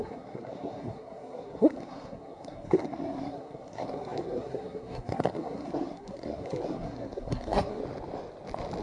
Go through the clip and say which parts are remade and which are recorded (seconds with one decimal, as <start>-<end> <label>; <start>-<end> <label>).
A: 0.0-7.8 remade; 7.8-8.8 recorded